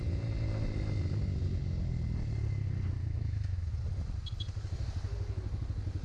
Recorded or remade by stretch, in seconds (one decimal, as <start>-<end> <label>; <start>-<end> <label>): 0.0-3.0 recorded; 3.0-3.7 remade; 3.7-6.0 recorded